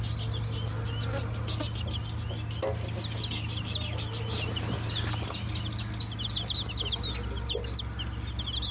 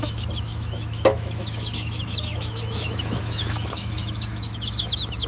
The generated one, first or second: second